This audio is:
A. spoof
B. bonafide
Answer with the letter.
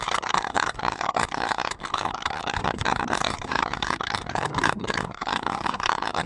A